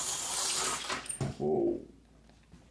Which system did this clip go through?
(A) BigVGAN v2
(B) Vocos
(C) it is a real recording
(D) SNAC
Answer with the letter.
C